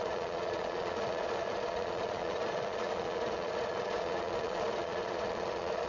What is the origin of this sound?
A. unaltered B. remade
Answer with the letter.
B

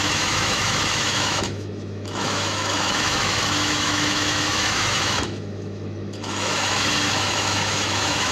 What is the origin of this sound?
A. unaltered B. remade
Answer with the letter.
B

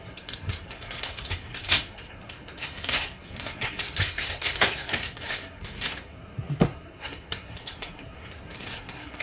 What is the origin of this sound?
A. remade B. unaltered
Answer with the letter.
A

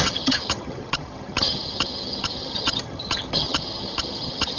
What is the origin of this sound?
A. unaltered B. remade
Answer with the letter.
B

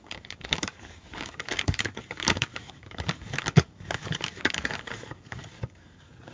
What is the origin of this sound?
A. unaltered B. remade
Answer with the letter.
B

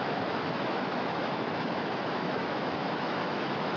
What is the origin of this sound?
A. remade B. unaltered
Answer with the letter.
A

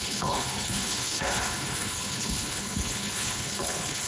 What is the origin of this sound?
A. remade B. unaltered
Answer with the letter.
A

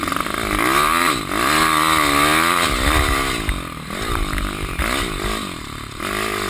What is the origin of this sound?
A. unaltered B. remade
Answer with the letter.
A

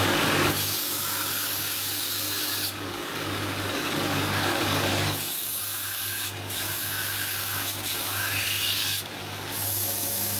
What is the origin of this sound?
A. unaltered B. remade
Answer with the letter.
B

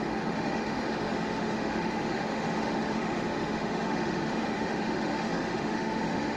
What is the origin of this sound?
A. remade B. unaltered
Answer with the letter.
A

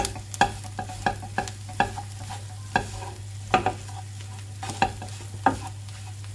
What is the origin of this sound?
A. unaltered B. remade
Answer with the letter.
A